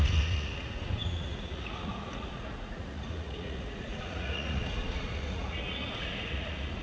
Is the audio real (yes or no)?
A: no